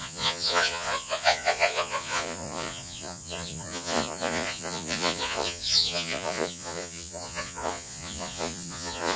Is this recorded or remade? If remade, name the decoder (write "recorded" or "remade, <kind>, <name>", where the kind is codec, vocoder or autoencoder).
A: remade, vocoder, Vocos